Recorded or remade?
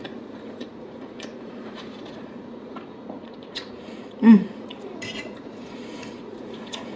remade